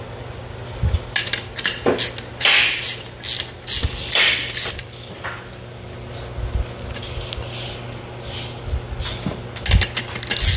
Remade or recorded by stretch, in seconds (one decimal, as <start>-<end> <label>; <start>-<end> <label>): 0.0-10.6 recorded